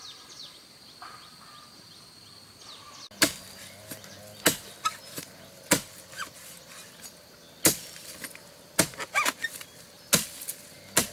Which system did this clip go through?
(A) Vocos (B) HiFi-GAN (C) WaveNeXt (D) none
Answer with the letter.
D